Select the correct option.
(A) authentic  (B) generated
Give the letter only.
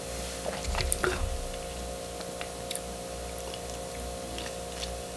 A